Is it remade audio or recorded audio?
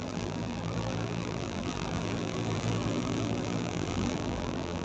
remade